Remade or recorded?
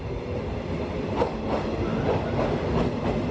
recorded